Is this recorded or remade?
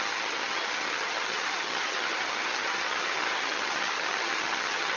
remade